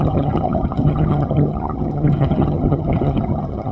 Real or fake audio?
fake